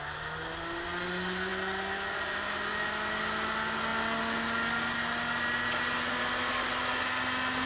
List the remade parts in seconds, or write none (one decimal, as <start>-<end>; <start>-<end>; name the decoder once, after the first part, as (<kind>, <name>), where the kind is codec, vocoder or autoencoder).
none